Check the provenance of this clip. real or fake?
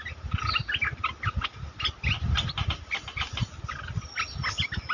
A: real